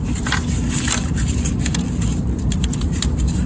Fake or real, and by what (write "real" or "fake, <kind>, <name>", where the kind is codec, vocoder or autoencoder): fake, vocoder, BigVGAN v2